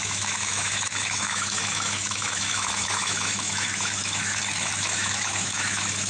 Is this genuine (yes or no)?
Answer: no